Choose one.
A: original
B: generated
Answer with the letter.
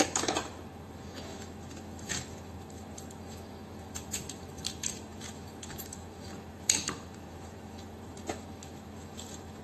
B